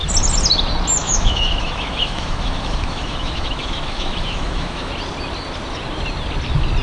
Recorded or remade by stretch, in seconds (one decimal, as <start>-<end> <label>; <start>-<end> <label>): 0.0-1.0 recorded; 1.0-4.9 remade; 4.9-6.8 recorded